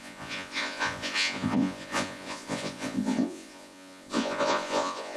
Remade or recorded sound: remade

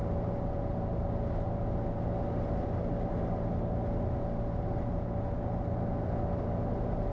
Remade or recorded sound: recorded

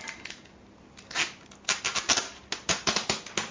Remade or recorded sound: recorded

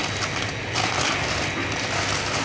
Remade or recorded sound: recorded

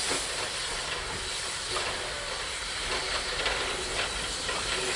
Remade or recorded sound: recorded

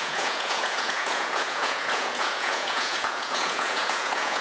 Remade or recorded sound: remade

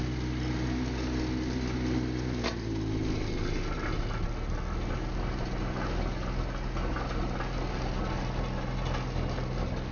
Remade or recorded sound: recorded